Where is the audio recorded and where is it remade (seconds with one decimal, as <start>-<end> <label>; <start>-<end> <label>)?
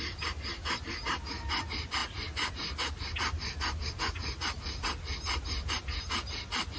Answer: 0.0-6.8 recorded